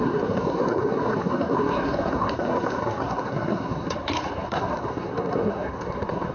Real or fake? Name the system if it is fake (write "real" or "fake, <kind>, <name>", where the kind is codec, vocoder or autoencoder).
fake, codec, SNAC